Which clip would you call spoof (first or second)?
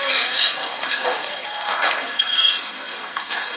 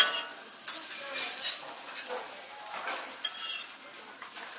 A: first